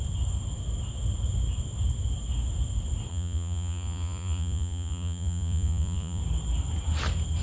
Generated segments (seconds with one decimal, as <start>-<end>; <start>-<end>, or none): 3.1-6.2